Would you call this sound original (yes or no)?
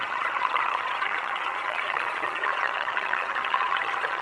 no